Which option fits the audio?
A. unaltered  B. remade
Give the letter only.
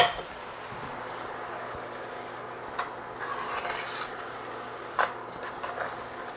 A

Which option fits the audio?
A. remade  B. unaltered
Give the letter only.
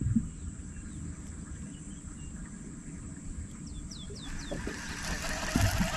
B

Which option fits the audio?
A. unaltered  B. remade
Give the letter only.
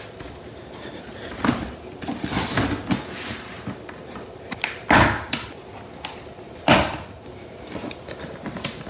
A